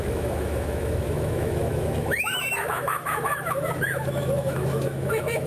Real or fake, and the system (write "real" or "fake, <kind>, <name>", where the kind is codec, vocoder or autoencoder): fake, autoencoder, DAC-VAE